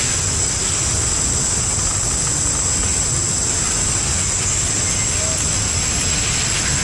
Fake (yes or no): no